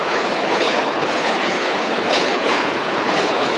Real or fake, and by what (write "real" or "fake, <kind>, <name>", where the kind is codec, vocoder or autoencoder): fake, codec, HILCodec